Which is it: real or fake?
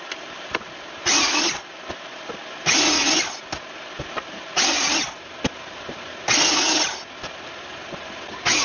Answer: real